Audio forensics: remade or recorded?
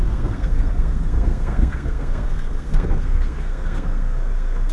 remade